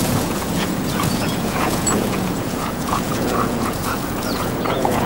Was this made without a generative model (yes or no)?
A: no